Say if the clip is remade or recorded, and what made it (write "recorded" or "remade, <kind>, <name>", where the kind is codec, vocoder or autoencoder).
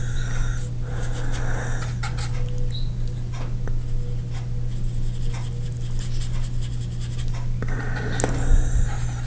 recorded